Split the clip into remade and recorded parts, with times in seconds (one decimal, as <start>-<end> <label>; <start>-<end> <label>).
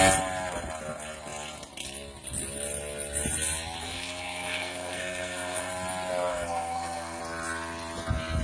0.0-3.8 recorded; 3.8-5.7 remade; 5.7-6.3 recorded; 6.3-7.2 remade; 7.2-8.4 recorded